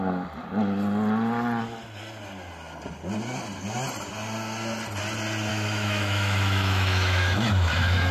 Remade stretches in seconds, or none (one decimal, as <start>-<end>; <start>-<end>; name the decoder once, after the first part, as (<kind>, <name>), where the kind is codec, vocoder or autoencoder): 5.5-8.1 (autoencoder, DAC-VAE)